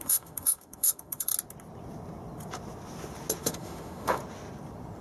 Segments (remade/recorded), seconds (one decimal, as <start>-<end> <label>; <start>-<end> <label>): 0.0-1.3 remade; 1.3-3.4 recorded; 3.4-4.2 remade; 4.2-5.0 recorded